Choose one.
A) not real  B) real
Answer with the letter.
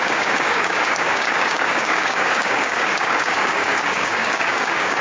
A